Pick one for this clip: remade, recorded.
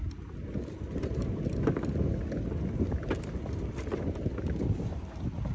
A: recorded